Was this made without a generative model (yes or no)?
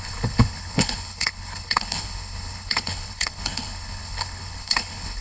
no